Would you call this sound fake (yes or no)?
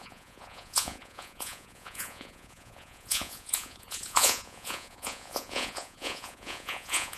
yes